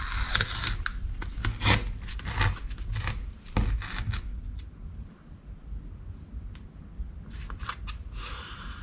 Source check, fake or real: real